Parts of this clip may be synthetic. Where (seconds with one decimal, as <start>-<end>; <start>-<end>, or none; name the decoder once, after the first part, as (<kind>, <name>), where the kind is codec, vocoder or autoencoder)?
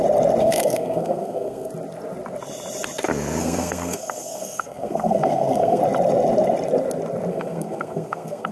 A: 0.4-1.7 (codec, SNAC); 3.4-5.8; 7.3-8.5